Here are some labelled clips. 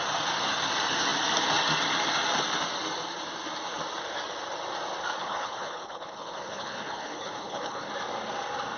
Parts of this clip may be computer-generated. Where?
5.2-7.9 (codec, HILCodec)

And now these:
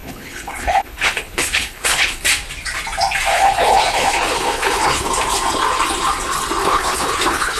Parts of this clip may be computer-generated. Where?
0.0-2.2 (codec, HILCodec); 3.3-5.1; 6.6-7.6

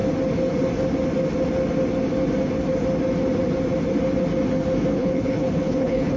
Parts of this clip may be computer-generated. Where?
4.9-6.2 (codec, HILCodec)

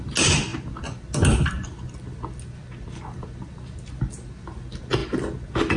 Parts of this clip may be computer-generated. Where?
none

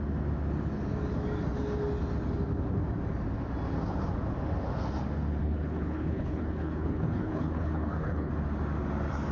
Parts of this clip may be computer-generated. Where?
5.4-8.3 (codec, HILCodec)

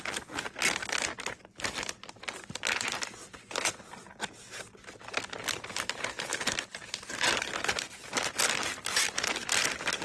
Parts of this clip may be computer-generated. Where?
none

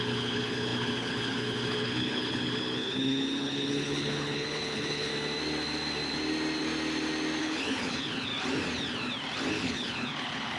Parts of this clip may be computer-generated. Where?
0.0-5.1 (codec, HILCodec); 7.4-8.3; 9.5-10.6